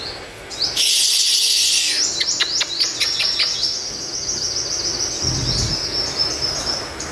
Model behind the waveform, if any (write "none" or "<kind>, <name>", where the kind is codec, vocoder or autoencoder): none